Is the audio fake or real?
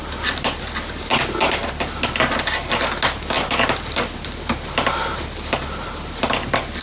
real